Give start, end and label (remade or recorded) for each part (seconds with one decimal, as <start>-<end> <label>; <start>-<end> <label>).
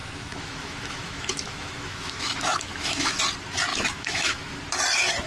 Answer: 0.0-3.2 remade; 3.2-3.7 recorded; 3.7-4.6 remade; 4.6-5.3 recorded